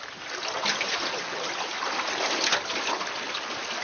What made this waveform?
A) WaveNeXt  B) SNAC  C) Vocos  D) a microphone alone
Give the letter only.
D